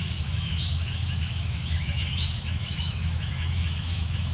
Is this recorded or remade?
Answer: remade